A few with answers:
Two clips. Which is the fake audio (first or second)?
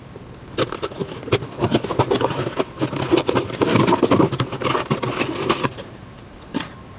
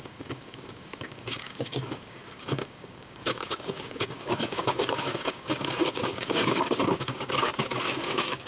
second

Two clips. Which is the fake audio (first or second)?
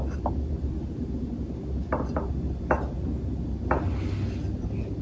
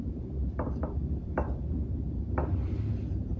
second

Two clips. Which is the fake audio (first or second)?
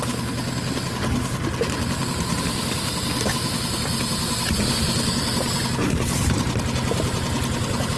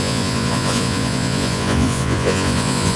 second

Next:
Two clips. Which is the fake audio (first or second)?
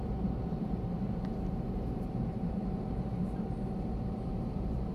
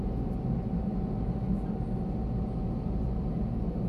first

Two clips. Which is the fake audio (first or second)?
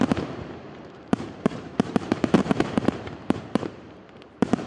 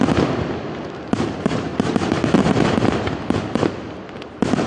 first